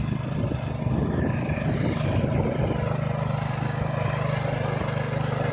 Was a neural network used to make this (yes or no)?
no